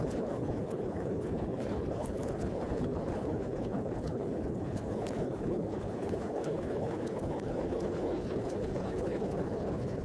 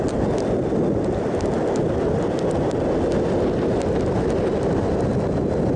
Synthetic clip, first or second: first